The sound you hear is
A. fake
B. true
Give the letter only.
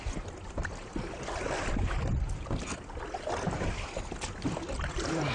B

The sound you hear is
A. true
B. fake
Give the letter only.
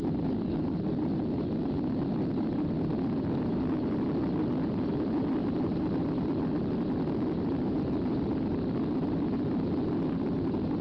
A